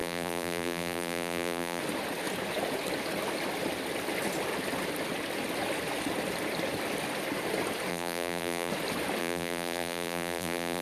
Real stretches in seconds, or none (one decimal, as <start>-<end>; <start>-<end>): 1.8-7.9; 8.7-9.2